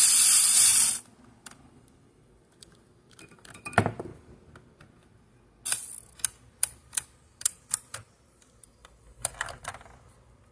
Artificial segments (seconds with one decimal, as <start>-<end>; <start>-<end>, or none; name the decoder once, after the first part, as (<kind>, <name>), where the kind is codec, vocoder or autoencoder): 0.0-4.1 (vocoder, BigVGAN v2); 6.6-10.5